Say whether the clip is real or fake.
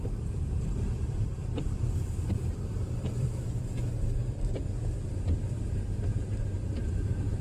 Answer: fake